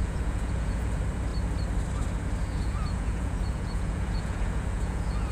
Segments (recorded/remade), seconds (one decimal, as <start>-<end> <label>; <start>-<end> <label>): 0.0-0.9 remade; 0.9-2.4 recorded; 2.4-5.3 remade